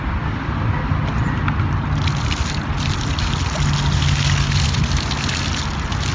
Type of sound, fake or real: real